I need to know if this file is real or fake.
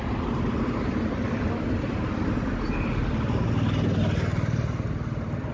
real